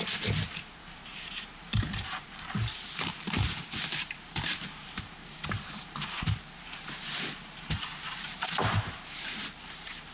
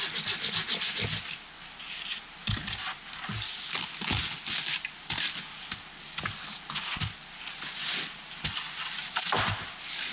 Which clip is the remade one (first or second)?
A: first